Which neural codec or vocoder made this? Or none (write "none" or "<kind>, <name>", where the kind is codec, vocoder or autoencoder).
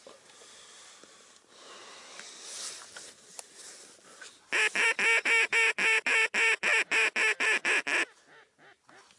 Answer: none